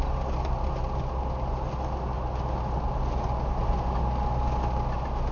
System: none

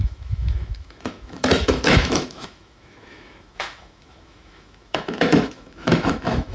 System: autoencoder, DAC-VAE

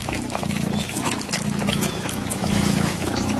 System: autoencoder, DAC-VAE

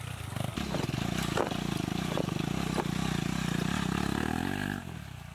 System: none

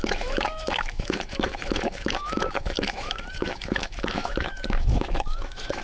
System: autoencoder, DAC-VAE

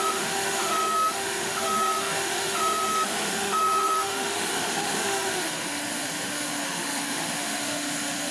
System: autoencoder, DAC-VAE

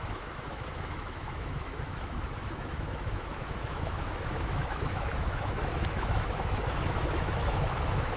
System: autoencoder, DAC-VAE